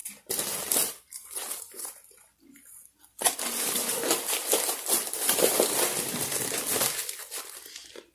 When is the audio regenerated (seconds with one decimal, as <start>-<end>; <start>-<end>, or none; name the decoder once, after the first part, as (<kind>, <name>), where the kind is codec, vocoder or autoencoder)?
0.0-7.0 (vocoder, BigVGAN v2)